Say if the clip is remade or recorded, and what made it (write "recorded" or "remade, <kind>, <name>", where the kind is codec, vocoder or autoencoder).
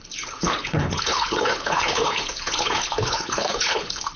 remade, codec, HILCodec